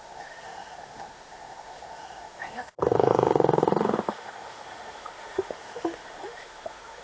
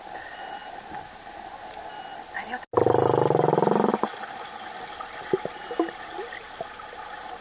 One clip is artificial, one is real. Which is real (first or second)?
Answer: second